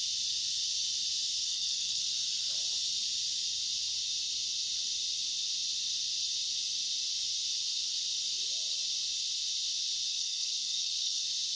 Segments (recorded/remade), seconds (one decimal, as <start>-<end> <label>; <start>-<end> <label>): 0.0-1.5 recorded; 1.5-2.0 remade; 2.0-10.1 recorded; 10.1-11.2 remade; 11.2-11.6 recorded